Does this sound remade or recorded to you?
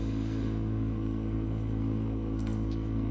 remade